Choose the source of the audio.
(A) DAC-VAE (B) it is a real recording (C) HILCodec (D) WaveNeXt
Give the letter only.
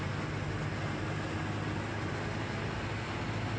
B